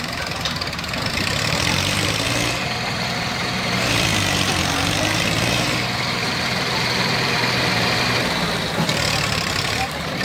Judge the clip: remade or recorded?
remade